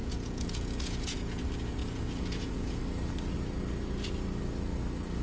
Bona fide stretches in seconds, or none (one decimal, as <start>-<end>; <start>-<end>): 1.4-1.8; 2.8-5.2